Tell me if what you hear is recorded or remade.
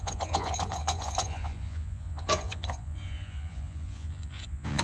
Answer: remade